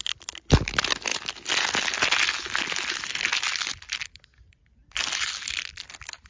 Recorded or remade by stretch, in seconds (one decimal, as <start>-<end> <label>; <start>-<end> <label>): 0.0-6.3 recorded